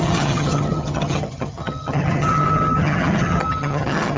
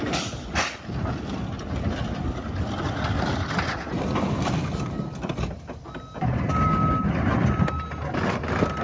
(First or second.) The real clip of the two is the second